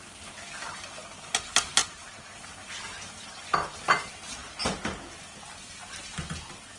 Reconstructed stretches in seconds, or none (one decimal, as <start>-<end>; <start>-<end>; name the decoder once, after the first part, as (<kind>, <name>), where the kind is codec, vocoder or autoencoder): 1.8-2.3 (vocoder, BigVGAN v2)